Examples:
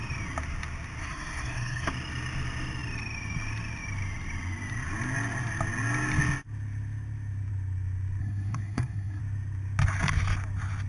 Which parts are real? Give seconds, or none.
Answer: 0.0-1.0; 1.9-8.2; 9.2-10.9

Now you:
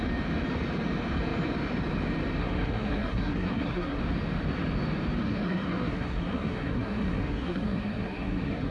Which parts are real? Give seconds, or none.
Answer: 0.0-2.4; 4.0-5.2

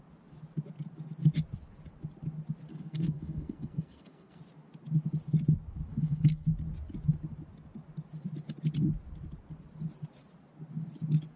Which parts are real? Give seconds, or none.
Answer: 0.0-2.7; 4.4-5.9; 6.5-11.4

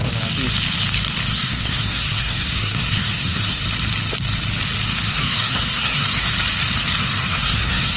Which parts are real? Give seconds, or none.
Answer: 0.0-1.3; 3.6-5.1; 6.3-7.0

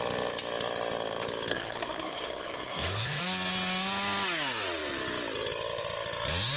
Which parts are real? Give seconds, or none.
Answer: 0.0-1.5; 3.2-6.6

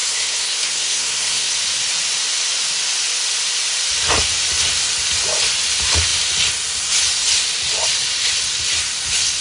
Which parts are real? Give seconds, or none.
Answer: 1.5-9.4

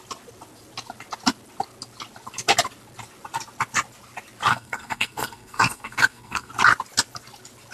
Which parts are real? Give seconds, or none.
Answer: 0.0-4.5; 6.5-7.7